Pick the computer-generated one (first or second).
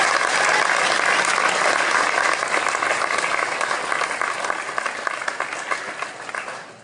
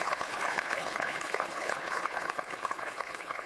second